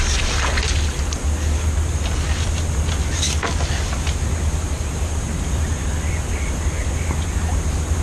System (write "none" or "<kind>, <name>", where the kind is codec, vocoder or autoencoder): none